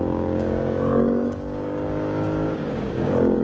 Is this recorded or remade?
remade